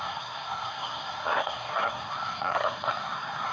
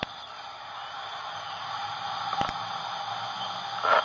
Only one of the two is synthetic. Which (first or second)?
first